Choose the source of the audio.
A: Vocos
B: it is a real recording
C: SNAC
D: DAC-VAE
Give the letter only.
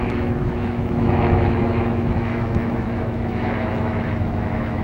D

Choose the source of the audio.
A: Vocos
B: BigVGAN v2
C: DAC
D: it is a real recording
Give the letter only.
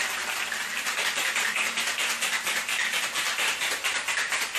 B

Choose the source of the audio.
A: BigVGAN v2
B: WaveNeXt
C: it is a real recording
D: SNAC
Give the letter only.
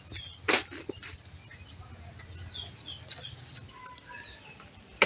C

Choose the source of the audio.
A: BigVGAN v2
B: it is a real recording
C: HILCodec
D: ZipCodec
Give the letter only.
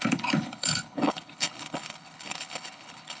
C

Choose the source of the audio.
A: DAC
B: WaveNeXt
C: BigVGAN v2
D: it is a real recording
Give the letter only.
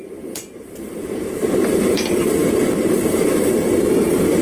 C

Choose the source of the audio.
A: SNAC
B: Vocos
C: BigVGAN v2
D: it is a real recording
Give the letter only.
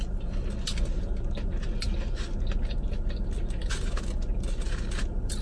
D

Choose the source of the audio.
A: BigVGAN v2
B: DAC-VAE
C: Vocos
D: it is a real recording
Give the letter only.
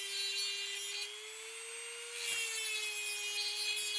D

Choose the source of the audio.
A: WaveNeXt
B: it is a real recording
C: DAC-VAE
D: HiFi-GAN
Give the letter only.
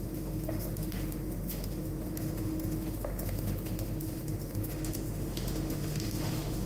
C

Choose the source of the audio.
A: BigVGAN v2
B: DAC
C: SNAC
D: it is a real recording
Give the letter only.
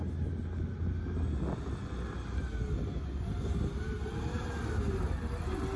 D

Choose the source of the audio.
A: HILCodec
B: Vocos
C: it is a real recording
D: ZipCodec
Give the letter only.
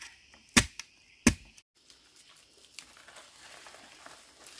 C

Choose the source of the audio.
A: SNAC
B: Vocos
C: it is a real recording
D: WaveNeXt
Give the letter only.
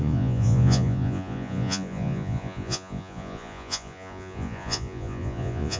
B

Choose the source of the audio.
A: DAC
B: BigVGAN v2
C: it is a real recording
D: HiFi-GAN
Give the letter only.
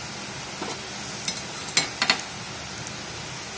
C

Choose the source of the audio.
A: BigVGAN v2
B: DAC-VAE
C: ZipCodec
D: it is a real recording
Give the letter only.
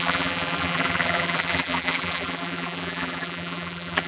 A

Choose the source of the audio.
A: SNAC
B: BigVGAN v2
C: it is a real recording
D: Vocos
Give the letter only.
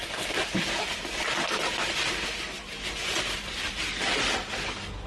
C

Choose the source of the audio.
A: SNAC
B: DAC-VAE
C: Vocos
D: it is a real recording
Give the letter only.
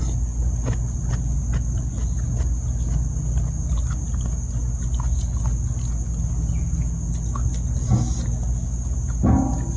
D